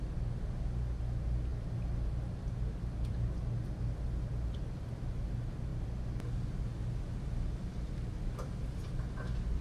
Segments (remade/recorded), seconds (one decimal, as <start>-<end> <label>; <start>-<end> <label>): 0.0-9.6 recorded